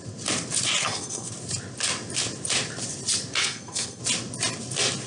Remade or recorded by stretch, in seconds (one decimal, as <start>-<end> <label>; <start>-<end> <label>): 0.0-0.8 recorded; 0.8-1.3 remade; 1.3-3.4 recorded; 3.4-4.0 remade; 4.0-5.1 recorded